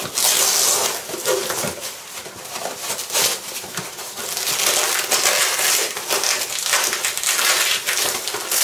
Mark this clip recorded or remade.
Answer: recorded